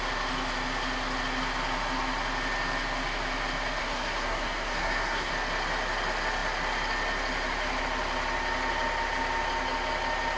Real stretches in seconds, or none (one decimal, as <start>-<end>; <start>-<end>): 0.0-3.8; 5.3-10.4